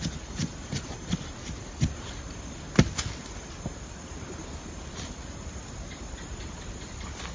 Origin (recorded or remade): recorded